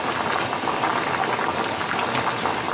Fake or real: real